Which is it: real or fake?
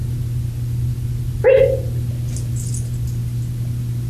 real